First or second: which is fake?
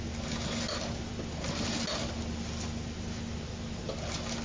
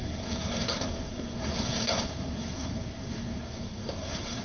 second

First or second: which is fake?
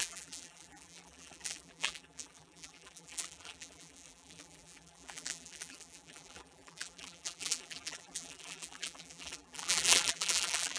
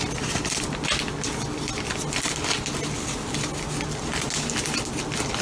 first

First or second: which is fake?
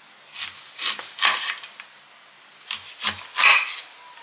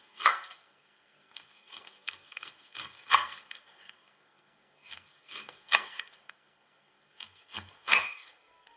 second